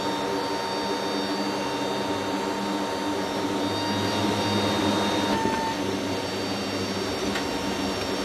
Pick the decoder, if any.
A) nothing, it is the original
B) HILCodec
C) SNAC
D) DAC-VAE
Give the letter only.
A